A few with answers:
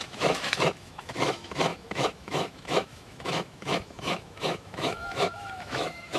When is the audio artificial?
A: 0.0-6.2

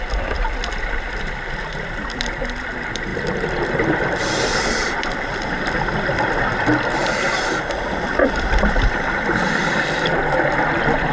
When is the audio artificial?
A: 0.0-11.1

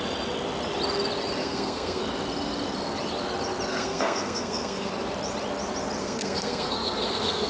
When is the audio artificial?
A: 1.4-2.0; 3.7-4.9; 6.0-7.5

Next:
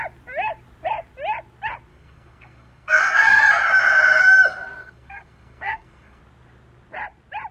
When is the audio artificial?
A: 1.9-3.4; 4.8-6.2